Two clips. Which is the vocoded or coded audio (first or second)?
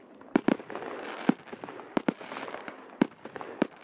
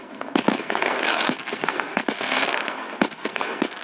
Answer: second